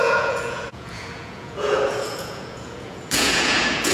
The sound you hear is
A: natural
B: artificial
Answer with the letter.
B